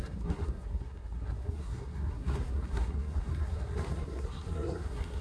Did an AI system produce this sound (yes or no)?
yes